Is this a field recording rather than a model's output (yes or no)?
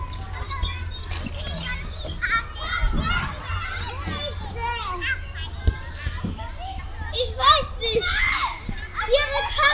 yes